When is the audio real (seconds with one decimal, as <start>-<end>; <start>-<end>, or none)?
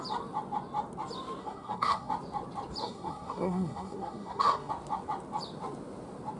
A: 0.0-1.4; 2.1-2.8; 4.7-6.4